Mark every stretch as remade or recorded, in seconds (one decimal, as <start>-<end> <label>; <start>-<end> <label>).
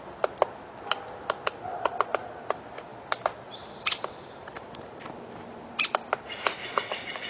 0.0-6.6 recorded; 6.6-7.3 remade